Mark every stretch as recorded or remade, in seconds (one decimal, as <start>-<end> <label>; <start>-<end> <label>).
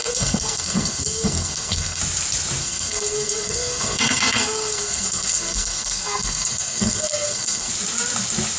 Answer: 0.0-2.0 remade; 2.0-2.6 recorded; 2.6-7.7 remade; 7.7-8.6 recorded